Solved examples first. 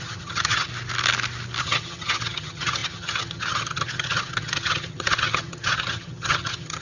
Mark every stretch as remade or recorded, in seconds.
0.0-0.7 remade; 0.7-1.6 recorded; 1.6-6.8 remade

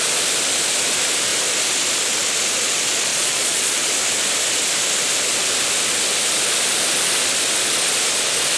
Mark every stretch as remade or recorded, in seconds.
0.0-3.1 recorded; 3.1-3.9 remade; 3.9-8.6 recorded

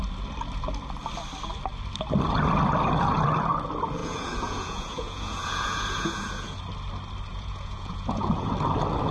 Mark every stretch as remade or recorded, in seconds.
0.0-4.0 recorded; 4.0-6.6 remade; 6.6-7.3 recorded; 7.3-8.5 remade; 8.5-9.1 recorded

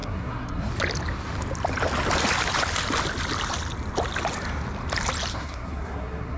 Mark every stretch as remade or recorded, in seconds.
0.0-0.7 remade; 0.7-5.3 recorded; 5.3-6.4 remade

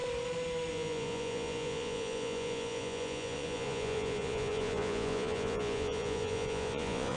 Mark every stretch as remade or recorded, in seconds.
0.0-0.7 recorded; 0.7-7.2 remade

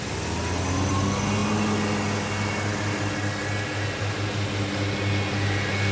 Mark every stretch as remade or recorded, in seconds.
0.0-5.9 recorded

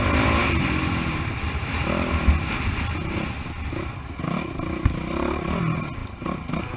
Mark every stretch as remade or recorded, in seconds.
0.0-6.8 recorded